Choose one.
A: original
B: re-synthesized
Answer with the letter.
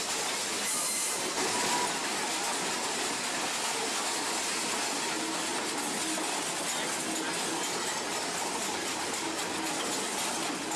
A